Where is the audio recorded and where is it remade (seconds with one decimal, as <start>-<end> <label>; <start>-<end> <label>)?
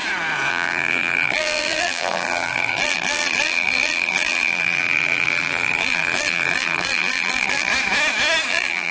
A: 0.0-0.5 recorded; 0.5-7.7 remade; 7.7-8.5 recorded; 8.5-8.9 remade